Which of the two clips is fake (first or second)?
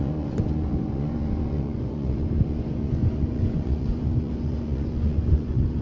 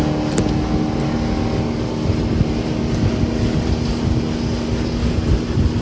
first